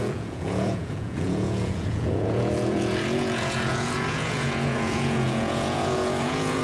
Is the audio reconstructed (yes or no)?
yes